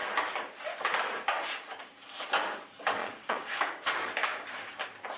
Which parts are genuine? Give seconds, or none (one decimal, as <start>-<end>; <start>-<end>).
0.0-3.0; 3.6-5.2